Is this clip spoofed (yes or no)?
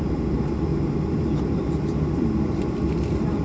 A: no